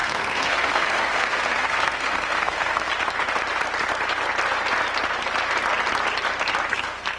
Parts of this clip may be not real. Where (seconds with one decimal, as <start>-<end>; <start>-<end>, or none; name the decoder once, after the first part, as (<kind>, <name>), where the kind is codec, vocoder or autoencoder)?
0.0-2.9 (codec, SNAC); 6.7-7.2

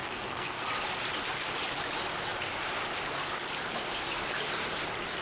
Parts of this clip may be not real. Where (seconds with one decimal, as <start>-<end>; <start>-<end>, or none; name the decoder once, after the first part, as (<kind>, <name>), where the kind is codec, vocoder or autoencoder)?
0.0-0.7 (codec, SNAC)

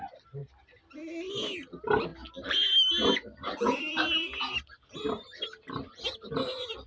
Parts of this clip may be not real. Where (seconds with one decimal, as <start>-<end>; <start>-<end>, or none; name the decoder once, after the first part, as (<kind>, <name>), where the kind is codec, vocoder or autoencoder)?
none

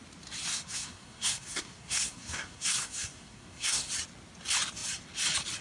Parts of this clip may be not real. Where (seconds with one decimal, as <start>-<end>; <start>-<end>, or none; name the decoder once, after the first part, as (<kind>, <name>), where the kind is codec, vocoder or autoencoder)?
0.5-3.9 (codec, SNAC)

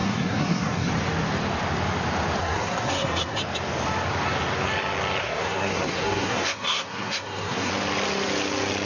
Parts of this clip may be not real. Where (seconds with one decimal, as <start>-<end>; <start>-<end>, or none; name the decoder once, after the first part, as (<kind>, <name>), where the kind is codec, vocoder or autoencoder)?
0.0-0.9 (codec, SNAC); 2.4-3.4; 5.2-7.7

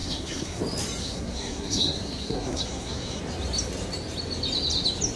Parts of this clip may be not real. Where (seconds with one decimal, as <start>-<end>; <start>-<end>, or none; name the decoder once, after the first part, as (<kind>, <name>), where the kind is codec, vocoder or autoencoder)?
0.0-0.6 (codec, SNAC); 1.0-3.2